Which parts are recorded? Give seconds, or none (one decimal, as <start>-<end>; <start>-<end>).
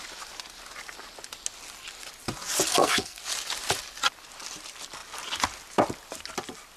0.0-2.7; 3.2-6.8